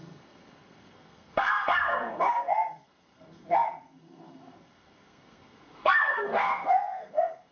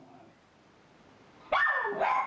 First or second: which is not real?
first